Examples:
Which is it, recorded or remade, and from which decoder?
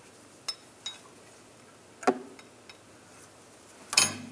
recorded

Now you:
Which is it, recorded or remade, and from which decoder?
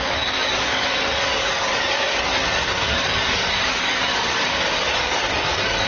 remade, codec, DAC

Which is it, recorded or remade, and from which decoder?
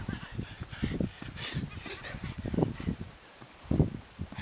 recorded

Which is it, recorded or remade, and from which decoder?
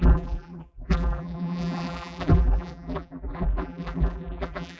remade, vocoder, BigVGAN v2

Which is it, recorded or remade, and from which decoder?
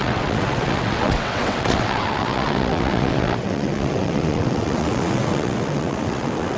remade, vocoder, WaveNeXt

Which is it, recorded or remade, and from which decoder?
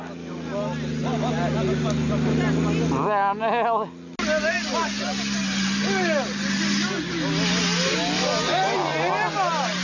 recorded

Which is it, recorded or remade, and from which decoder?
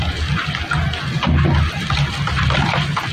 recorded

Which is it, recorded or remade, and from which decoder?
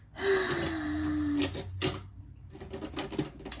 recorded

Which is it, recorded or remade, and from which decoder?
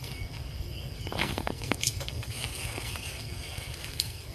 remade, codec, SNAC